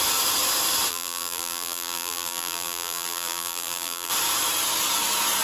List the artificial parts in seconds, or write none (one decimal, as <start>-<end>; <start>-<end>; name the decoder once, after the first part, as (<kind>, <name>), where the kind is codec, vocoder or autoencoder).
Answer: 0.9-4.1 (vocoder, BigVGAN v2)